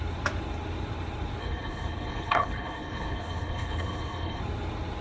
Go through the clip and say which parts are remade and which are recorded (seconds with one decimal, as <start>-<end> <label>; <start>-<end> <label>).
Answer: 0.0-1.4 recorded; 1.4-4.4 remade; 4.4-5.0 recorded